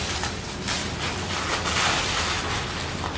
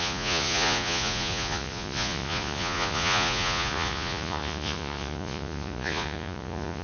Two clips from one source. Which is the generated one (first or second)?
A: second